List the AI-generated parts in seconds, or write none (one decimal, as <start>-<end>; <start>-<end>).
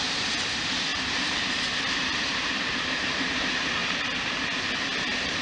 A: 0.0-3.8; 5.0-5.4